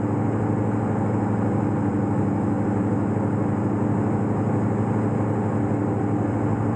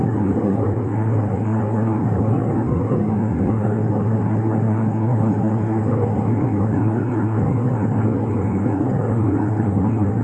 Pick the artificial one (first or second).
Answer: second